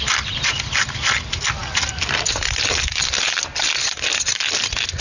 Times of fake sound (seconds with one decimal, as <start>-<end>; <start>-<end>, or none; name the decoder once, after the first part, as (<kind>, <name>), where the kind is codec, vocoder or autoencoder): none